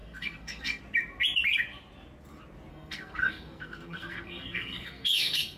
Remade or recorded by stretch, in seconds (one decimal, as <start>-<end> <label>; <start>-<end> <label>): 0.0-0.8 remade; 0.8-2.7 recorded; 2.7-5.6 remade